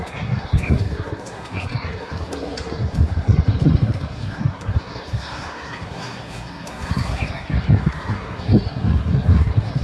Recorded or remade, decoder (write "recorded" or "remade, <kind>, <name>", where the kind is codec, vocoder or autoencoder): remade, codec, SNAC